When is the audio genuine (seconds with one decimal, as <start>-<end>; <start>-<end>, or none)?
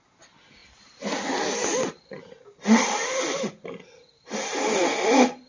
0.0-5.5